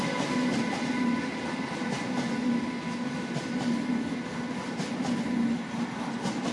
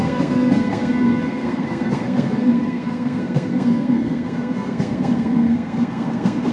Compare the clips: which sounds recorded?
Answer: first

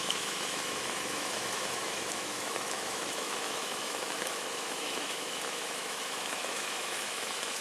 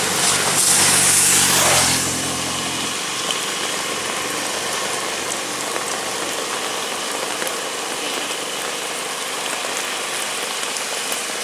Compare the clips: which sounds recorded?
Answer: second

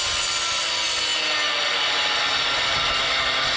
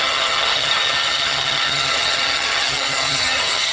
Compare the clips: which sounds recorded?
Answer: first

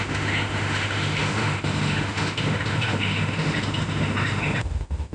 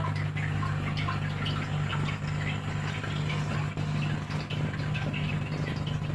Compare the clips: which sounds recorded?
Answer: second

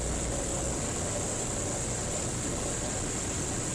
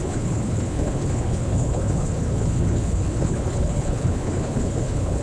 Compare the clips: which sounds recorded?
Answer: first